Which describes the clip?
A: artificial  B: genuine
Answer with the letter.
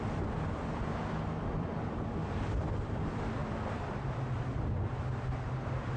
A